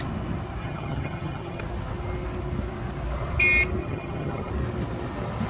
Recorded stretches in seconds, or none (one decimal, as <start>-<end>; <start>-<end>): 0.0-0.6; 1.6-3.8; 4.5-5.5